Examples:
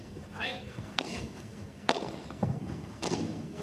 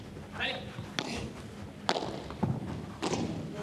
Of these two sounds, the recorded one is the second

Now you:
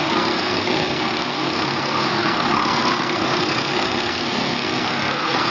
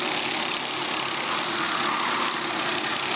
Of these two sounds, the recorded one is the second